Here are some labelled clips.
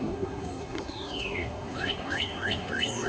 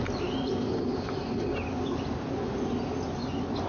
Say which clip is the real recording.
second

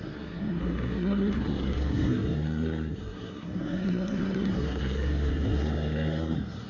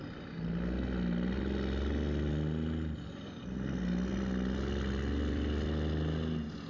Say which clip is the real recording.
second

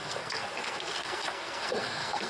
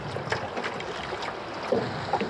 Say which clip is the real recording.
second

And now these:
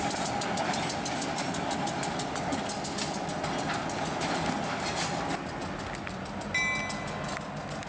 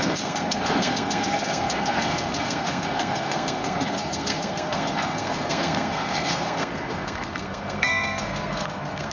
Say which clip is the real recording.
first